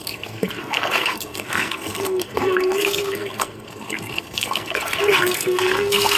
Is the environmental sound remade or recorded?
remade